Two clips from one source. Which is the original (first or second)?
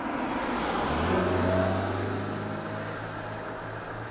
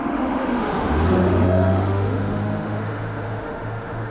first